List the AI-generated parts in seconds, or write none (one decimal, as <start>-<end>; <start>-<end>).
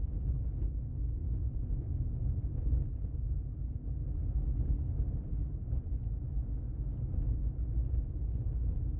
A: 1.2-2.6